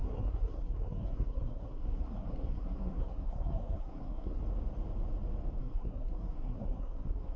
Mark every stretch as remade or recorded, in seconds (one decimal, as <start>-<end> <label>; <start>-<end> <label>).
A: 0.0-4.4 remade; 4.4-5.6 recorded; 5.6-7.4 remade